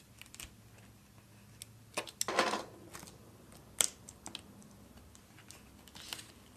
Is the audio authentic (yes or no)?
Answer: yes